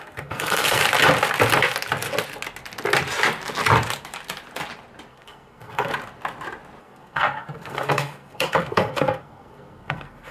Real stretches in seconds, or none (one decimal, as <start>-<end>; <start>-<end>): 0.8-5.1; 5.9-6.8